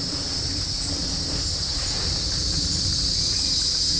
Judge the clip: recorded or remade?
recorded